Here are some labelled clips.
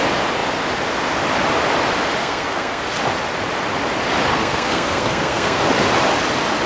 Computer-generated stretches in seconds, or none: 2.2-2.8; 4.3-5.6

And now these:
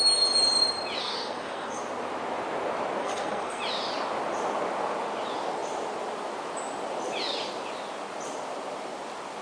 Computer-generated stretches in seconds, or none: 1.0-1.8; 3.0-3.6

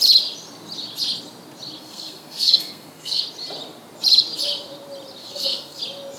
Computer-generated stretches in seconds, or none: 1.8-3.2; 5.2-5.8